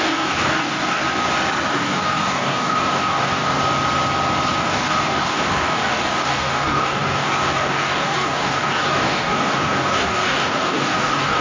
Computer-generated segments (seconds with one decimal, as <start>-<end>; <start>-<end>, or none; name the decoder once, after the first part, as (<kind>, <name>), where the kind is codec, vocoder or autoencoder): 0.0-1.0 (codec, DAC); 1.7-3.6; 4.6-11.4